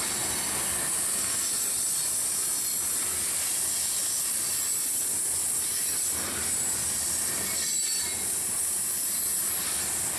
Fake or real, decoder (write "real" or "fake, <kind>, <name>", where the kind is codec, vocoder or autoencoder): real